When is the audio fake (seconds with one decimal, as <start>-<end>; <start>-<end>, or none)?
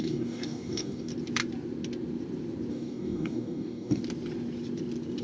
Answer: 0.0-1.1; 2.7-4.0